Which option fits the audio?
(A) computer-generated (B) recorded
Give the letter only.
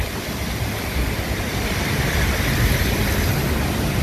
B